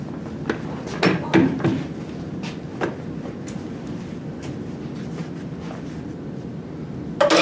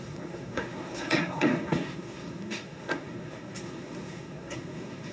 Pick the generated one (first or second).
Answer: second